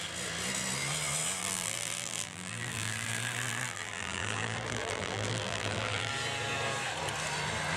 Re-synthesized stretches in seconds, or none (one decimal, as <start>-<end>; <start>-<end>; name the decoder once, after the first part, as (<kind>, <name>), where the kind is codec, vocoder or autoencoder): 1.4-6.1 (vocoder, BigVGAN v2)